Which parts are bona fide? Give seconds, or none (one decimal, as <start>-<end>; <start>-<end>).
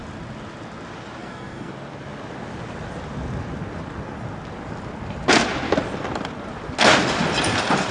0.0-1.2; 1.7-7.9